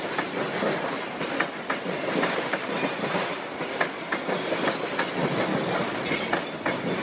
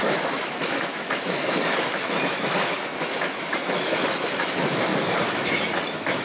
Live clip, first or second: first